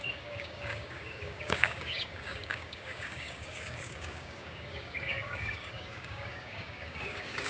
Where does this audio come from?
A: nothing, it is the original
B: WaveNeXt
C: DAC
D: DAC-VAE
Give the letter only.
C